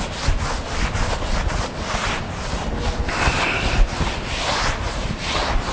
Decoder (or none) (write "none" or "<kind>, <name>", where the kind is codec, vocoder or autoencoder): none